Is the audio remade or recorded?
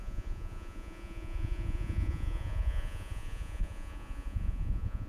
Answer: remade